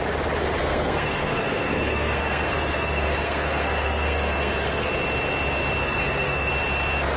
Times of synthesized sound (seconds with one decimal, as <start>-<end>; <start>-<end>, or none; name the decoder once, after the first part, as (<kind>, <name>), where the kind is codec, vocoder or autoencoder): 0.6-4.9 (codec, SNAC); 5.8-6.5